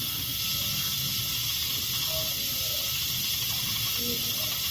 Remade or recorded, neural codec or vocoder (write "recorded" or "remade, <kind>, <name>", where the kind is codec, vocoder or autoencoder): recorded